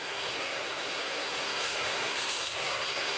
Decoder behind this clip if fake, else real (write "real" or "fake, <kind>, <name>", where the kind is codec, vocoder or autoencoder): fake, codec, SNAC